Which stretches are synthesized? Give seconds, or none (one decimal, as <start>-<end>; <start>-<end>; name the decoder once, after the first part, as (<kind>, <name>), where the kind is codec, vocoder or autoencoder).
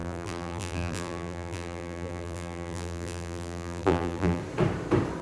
0.0-4.4 (vocoder, BigVGAN v2)